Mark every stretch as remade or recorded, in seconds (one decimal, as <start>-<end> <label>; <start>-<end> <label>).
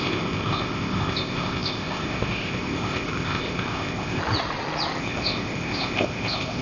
0.0-4.2 remade; 4.2-5.0 recorded; 5.0-6.6 remade